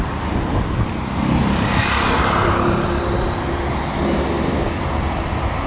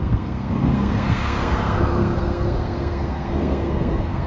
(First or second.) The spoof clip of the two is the second